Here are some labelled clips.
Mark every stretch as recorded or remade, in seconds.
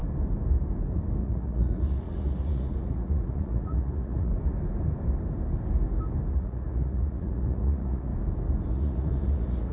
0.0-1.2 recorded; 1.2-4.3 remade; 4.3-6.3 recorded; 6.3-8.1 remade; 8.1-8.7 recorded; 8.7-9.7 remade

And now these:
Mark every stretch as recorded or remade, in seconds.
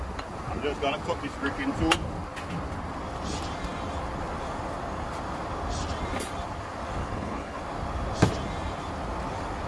0.0-7.0 recorded; 7.0-7.6 remade; 7.6-9.7 recorded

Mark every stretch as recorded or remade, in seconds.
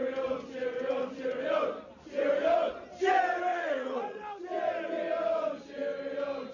0.0-3.5 recorded; 3.5-4.2 remade; 4.2-6.5 recorded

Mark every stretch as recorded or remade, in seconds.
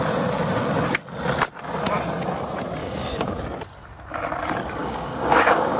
0.0-2.8 recorded; 2.8-3.4 remade; 3.4-4.8 recorded; 4.8-5.8 remade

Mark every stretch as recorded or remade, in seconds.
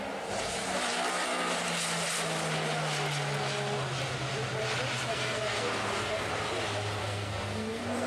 0.0-5.1 recorded; 5.1-6.3 remade; 6.3-7.0 recorded; 7.0-8.1 remade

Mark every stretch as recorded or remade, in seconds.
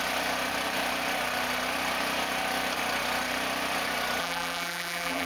0.0-4.2 recorded; 4.2-5.3 remade